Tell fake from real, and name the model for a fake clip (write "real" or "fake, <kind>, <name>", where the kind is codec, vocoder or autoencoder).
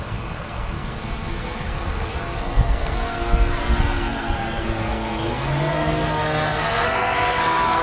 fake, codec, SNAC